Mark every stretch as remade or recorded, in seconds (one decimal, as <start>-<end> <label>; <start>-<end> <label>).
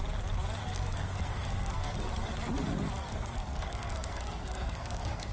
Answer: 0.0-0.6 recorded; 0.6-2.1 remade; 2.1-3.0 recorded; 3.0-5.3 remade